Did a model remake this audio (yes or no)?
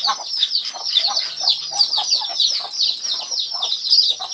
no